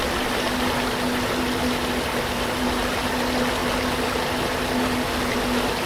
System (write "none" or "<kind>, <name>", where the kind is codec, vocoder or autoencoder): none